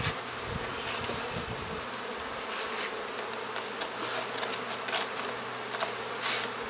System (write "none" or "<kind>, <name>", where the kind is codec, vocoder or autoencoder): none